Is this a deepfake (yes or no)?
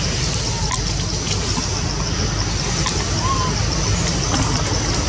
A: no